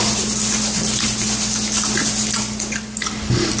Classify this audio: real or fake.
real